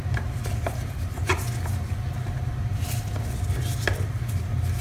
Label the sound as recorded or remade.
recorded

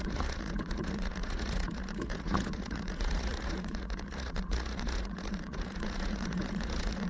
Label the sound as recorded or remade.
remade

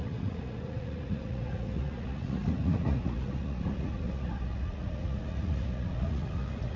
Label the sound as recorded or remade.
remade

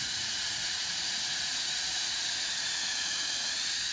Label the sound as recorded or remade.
remade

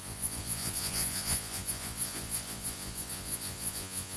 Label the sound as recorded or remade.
remade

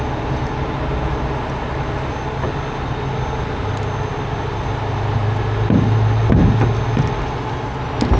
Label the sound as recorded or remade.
recorded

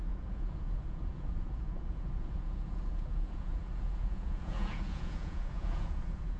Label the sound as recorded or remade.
remade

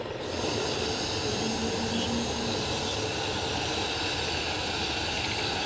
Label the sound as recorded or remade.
recorded